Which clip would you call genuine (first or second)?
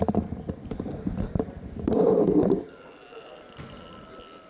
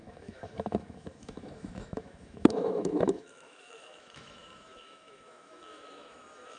first